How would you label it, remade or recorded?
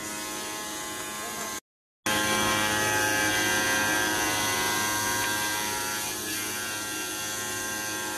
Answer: recorded